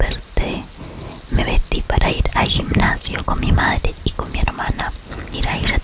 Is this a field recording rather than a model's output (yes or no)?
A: yes